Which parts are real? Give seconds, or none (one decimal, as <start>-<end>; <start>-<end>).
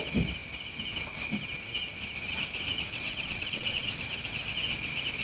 0.0-3.1; 4.0-5.2